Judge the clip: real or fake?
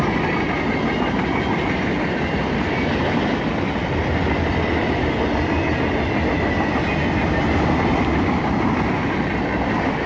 real